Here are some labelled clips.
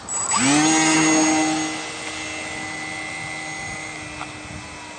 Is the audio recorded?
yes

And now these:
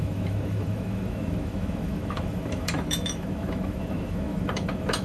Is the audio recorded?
no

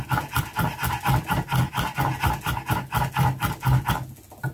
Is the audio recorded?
yes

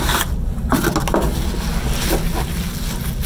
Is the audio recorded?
yes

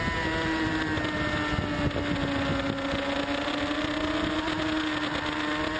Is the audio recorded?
yes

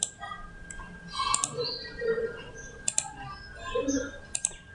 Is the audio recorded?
yes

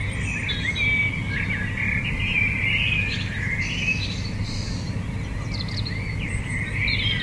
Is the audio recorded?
yes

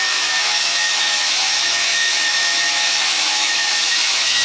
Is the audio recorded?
no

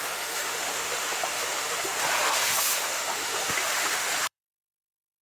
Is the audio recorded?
no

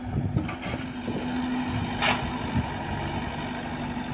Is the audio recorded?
yes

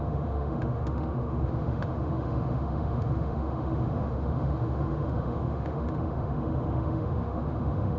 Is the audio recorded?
no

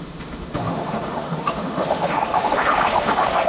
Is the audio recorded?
no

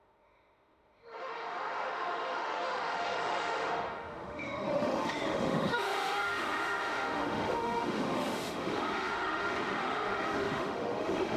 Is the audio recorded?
no